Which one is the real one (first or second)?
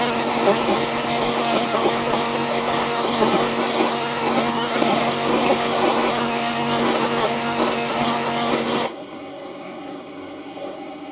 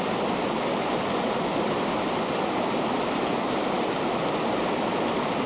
second